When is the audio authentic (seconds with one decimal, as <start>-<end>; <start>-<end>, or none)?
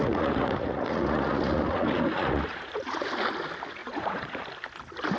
3.1-3.8; 4.4-5.2